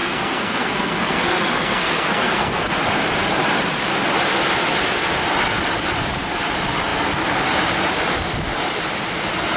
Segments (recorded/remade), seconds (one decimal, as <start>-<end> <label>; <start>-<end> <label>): 0.0-2.7 remade; 2.7-9.6 recorded